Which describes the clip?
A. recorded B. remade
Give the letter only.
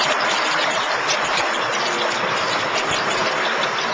B